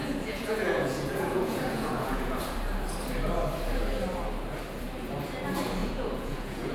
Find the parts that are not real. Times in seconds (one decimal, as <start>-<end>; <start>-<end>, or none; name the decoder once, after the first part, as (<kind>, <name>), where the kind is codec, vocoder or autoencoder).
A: 0.0-2.4 (vocoder, Vocos); 5.8-6.7